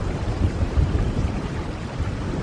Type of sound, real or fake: fake